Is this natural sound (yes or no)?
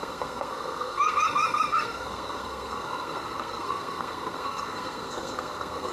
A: no